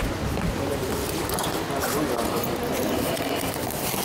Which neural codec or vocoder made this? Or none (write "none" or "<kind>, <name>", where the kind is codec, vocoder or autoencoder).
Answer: none